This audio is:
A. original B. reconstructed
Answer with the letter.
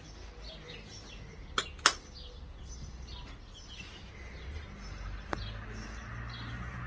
A